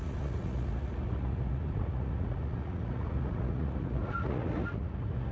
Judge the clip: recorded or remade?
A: remade